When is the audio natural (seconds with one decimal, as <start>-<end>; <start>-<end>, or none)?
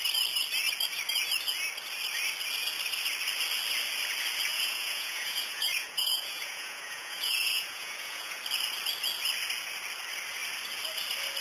0.0-4.5; 8.4-11.4